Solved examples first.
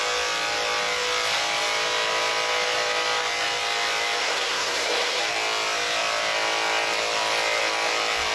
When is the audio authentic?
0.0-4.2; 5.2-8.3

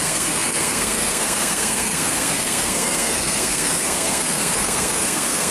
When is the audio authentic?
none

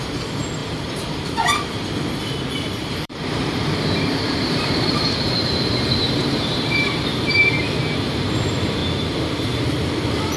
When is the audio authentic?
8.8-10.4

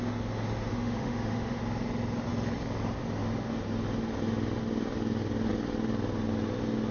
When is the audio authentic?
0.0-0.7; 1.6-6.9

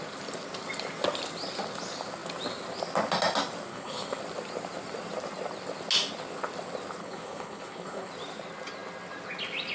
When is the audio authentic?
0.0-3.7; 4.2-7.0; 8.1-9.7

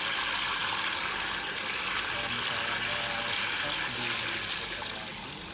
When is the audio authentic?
0.0-5.5

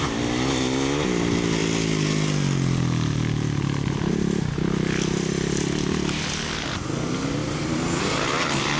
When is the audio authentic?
0.0-7.4; 8.0-8.8